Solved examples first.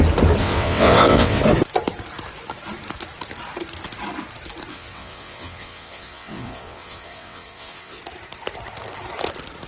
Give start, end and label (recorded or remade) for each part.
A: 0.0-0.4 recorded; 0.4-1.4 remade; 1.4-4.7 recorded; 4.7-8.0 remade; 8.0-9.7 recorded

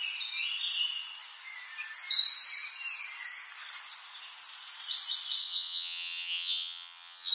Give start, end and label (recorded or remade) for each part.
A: 0.0-5.4 recorded; 5.4-7.3 remade

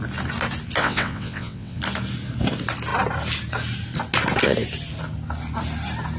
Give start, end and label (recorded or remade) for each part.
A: 0.0-0.8 recorded; 0.8-1.8 remade; 1.8-6.2 recorded